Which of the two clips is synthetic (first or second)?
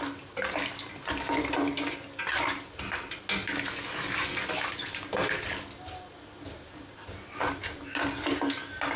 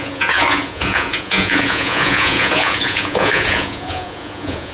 second